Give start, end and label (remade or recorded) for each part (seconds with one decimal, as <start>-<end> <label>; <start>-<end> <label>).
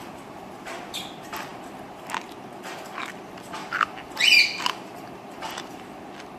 0.0-3.6 recorded; 3.6-6.0 remade; 6.0-6.4 recorded